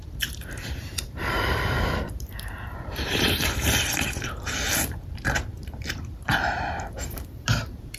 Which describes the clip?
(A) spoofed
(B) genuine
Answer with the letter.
A